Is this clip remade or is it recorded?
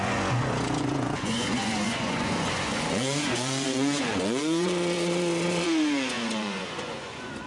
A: remade